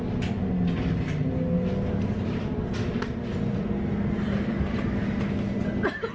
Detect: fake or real real